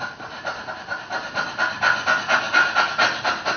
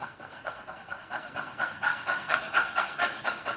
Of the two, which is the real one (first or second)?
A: first